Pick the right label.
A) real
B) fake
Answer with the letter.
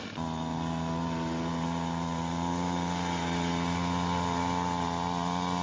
A